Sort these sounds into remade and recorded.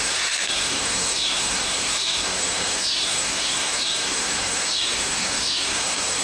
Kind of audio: remade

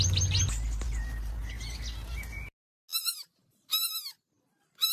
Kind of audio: recorded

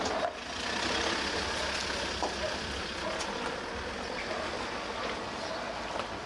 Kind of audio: recorded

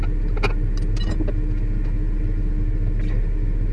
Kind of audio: recorded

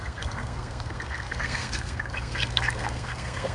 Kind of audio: remade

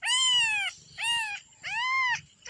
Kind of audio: recorded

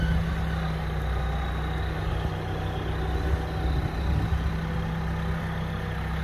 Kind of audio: recorded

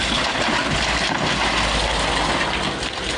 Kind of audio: recorded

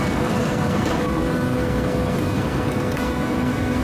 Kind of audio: remade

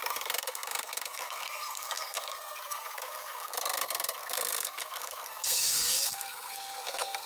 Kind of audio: remade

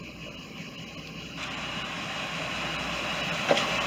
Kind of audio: recorded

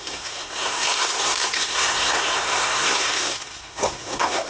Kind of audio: remade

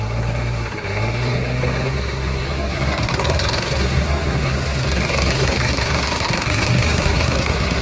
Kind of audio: remade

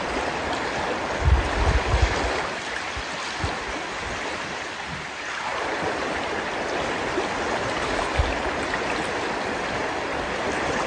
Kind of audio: recorded